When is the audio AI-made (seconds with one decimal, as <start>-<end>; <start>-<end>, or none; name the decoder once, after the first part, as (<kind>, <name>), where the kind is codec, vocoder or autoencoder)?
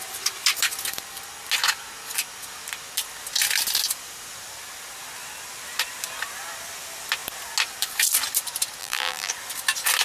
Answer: 8.8-9.3 (vocoder, BigVGAN v2)